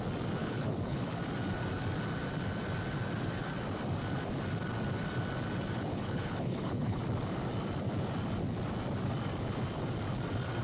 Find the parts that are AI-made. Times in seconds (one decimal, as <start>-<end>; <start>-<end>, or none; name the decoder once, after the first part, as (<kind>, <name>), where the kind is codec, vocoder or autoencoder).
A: 0.4-1.2 (codec, HILCodec); 5.9-7.0